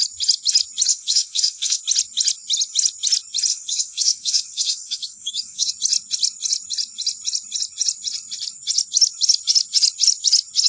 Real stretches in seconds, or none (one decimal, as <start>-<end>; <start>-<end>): 0.0-0.9; 1.8-3.5; 5.7-10.7